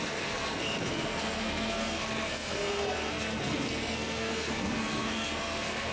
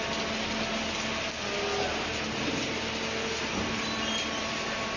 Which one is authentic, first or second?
second